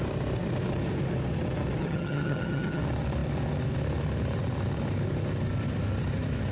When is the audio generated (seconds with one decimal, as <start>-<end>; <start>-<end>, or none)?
1.8-2.8